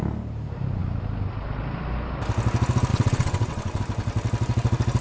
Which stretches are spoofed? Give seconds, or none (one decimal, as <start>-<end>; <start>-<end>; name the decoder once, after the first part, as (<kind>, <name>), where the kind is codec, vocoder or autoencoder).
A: 2.9-3.8 (vocoder, WaveNeXt)